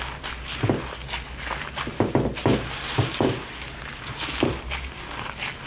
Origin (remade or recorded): recorded